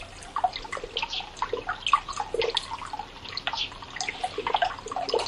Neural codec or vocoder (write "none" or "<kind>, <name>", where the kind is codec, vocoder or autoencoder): none